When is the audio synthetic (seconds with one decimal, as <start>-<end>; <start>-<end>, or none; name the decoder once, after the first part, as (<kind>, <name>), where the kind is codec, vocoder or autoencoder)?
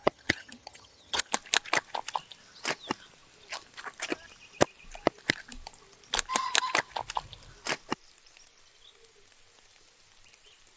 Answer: 0.0-1.3 (vocoder, HiFi-GAN)